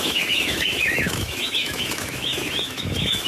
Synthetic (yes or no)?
yes